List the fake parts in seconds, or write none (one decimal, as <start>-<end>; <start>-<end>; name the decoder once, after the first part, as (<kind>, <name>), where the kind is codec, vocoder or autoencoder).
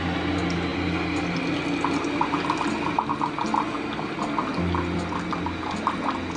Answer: none